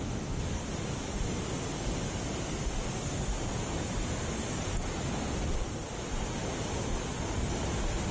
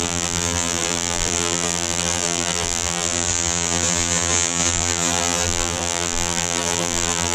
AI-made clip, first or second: second